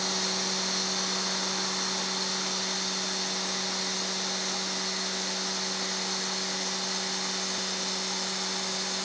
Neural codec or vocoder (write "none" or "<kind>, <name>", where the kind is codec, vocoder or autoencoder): none